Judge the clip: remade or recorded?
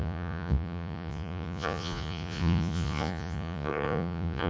remade